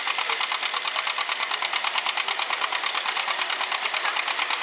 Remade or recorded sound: recorded